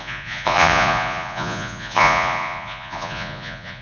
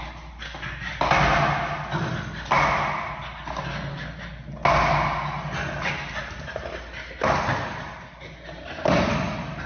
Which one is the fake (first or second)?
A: first